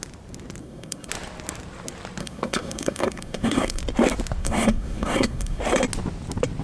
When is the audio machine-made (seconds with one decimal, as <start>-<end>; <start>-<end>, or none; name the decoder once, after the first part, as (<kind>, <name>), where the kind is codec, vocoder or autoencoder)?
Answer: 0.6-1.1 (codec, SNAC); 2.2-3.8; 4.4-5.6